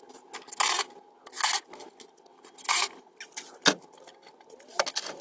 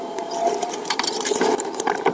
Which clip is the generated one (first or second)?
second